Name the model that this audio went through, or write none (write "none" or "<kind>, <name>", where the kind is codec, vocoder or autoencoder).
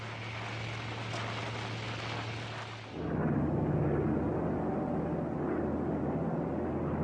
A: none